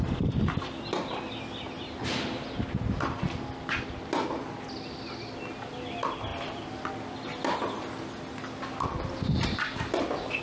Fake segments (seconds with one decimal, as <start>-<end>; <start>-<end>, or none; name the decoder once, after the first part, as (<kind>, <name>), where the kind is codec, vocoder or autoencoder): none